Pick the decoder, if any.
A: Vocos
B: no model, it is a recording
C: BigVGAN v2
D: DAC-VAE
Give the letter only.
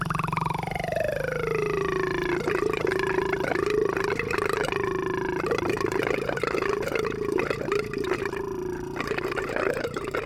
C